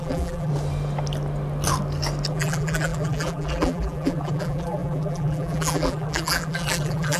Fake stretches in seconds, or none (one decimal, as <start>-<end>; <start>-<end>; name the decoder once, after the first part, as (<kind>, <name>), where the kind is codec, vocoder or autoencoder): 0.0-0.5 (vocoder, BigVGAN v2); 2.3-7.2